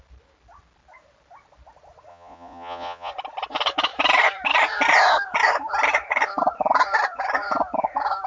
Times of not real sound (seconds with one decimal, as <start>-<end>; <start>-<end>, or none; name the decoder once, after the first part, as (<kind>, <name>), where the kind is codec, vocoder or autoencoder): 2.1-3.1 (vocoder, Vocos)